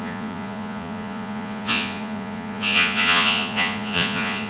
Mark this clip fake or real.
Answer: fake